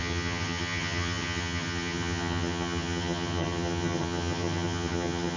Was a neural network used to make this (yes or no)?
yes